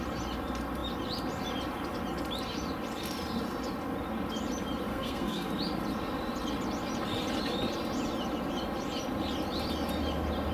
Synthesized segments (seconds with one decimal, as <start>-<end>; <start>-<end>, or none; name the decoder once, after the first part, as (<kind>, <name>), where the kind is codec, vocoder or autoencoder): 4.9-5.5 (codec, SNAC)